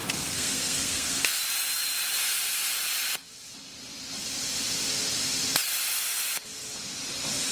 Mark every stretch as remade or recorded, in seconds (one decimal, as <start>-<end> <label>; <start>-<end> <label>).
0.0-1.4 remade; 1.4-7.5 recorded